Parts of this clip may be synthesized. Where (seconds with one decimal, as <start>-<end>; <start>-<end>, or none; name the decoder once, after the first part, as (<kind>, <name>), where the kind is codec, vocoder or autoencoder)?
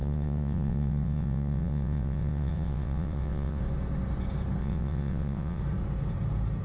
0.0-3.6 (vocoder, WaveNeXt); 4.6-5.6